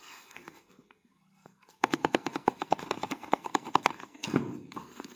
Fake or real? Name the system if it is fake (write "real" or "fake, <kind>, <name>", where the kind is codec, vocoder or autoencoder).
fake, codec, SNAC